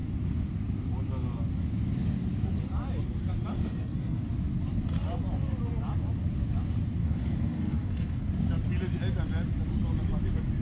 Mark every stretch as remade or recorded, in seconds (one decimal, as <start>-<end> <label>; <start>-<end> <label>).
0.0-3.5 recorded; 3.5-4.2 remade; 4.2-7.0 recorded; 7.0-8.3 remade; 8.3-10.6 recorded